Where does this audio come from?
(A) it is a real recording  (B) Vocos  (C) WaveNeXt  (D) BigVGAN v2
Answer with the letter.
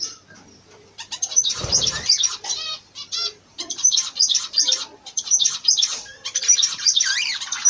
D